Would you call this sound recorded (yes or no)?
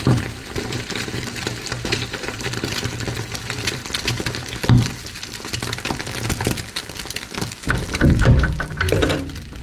no